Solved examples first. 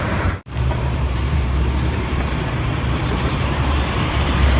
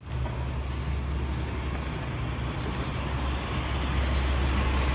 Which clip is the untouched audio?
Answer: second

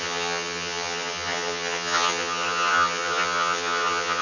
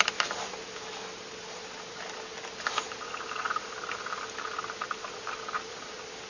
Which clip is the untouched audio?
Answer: second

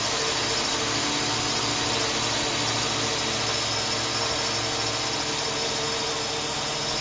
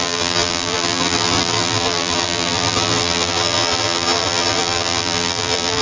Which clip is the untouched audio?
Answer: first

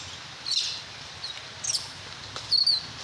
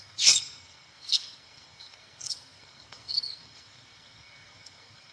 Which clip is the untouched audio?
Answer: first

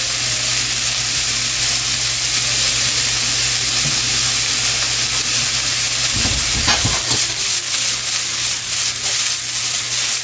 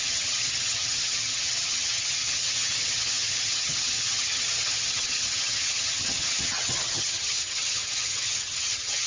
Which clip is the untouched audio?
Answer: first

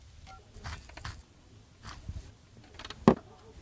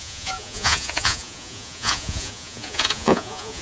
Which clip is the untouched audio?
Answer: first